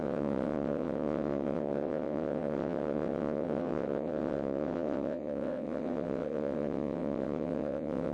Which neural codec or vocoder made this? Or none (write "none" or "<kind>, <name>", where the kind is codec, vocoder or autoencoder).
vocoder, WaveNeXt